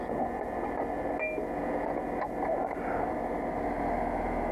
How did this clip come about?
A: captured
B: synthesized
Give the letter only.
A